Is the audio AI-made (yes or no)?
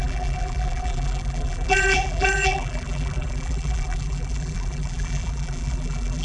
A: yes